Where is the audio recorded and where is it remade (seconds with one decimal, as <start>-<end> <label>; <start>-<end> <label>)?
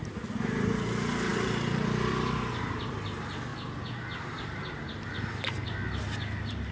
0.0-6.7 recorded